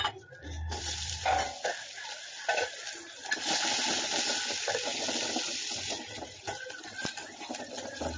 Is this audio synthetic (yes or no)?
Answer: no